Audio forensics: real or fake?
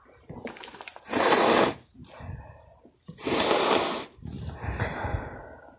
fake